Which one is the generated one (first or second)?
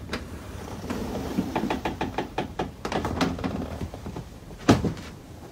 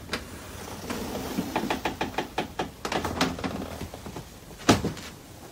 first